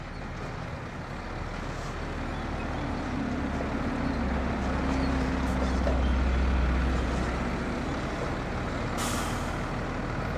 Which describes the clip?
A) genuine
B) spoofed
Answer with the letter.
A